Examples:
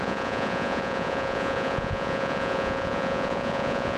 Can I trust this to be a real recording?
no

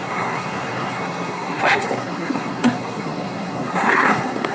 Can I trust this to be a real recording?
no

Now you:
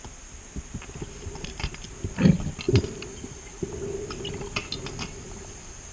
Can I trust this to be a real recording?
yes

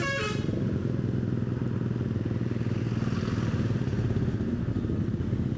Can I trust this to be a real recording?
yes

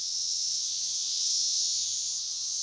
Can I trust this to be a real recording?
no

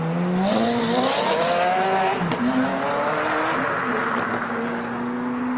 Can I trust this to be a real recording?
yes